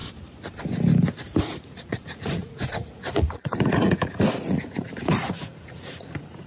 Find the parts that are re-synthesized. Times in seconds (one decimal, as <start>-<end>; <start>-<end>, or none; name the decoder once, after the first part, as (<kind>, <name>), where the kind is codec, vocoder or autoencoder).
1.4-6.5 (vocoder, Vocos)

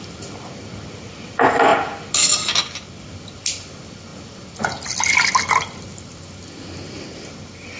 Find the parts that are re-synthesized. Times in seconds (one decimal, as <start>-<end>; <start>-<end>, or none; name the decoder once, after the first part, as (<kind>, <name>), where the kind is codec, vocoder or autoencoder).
none